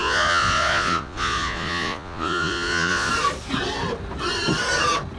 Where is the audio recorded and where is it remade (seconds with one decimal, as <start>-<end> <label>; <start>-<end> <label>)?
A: 0.0-3.1 remade; 3.1-5.2 recorded